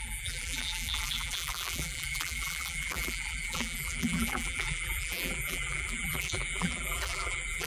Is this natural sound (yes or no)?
no